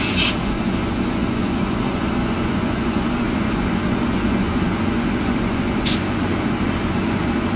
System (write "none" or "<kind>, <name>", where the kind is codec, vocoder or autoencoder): vocoder, Vocos